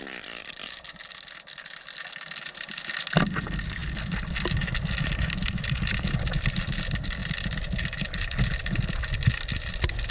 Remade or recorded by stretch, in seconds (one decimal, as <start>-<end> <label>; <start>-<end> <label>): 0.0-10.1 recorded